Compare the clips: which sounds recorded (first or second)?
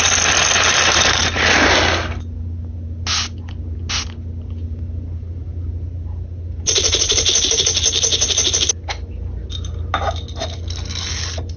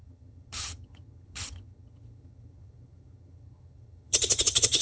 first